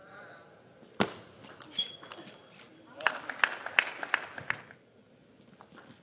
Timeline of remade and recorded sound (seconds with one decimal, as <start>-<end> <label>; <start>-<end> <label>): 0.0-6.0 recorded